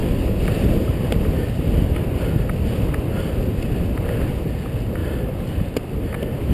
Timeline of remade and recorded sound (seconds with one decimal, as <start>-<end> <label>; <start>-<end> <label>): 0.0-5.0 recorded; 5.0-5.6 remade; 5.6-6.5 recorded